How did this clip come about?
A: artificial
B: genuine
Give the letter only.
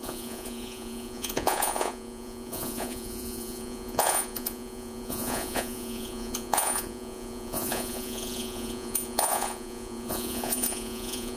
A